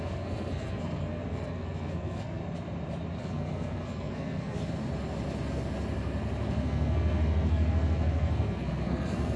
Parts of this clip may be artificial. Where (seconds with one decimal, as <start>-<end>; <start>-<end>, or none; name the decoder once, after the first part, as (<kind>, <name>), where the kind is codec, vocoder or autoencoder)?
0.0-2.4 (codec, SNAC); 3.2-4.6; 6.5-9.4